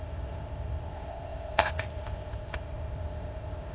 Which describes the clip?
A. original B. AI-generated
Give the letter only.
B